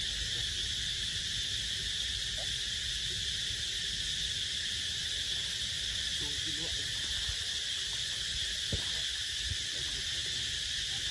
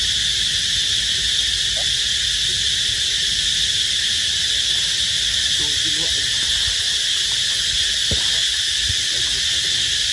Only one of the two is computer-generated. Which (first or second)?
first